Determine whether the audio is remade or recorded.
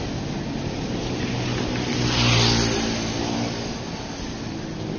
recorded